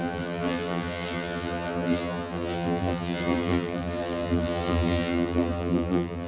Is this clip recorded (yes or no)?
no